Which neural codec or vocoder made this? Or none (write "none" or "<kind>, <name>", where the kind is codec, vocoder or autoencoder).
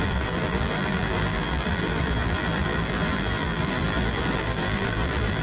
vocoder, BigVGAN v2